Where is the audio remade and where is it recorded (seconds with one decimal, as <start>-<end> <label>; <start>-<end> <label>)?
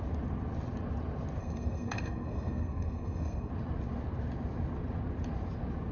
0.0-1.4 recorded; 1.4-3.5 remade; 3.5-5.9 recorded